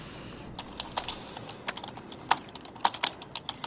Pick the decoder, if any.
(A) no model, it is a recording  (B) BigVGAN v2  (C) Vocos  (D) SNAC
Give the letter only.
A